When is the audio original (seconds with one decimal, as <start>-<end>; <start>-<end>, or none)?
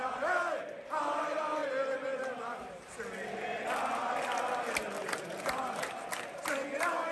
0.0-7.1